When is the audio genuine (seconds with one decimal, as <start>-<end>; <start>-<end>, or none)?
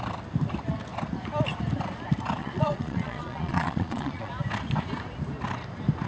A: 0.0-2.4; 4.3-6.1